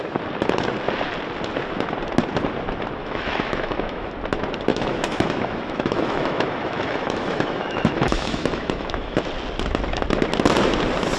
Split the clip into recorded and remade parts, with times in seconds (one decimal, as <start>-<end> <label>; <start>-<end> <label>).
0.0-3.0 recorded; 3.0-4.1 remade; 4.1-4.7 recorded; 4.7-9.2 remade; 9.2-11.2 recorded